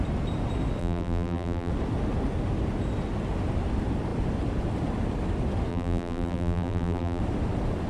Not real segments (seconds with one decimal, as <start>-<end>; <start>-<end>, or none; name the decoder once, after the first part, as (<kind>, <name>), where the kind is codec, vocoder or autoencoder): 0.8-1.7 (vocoder, BigVGAN v2); 5.7-7.2